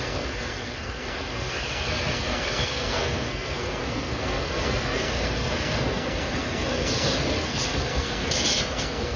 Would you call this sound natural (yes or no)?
no